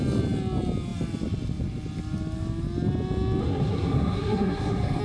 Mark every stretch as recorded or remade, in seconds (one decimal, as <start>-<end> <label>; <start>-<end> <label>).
0.0-3.4 recorded; 3.4-5.0 remade